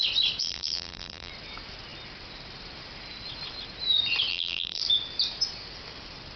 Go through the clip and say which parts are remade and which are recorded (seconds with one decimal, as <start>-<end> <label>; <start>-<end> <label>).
0.0-0.4 recorded; 0.4-1.3 remade; 1.3-4.3 recorded; 4.3-4.8 remade; 4.8-6.4 recorded